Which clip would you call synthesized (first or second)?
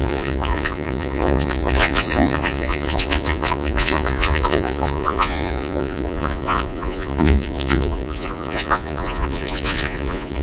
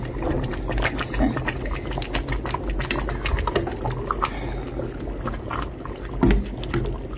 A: first